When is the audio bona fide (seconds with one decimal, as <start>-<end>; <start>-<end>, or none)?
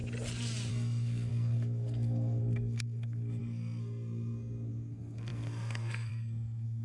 0.0-0.7